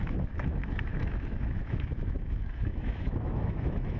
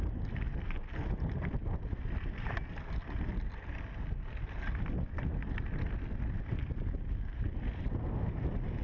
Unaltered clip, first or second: second